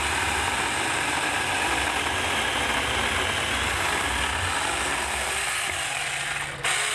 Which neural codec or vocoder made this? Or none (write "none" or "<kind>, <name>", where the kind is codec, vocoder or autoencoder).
none